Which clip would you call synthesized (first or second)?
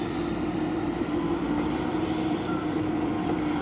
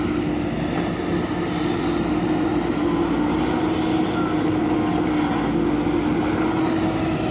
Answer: first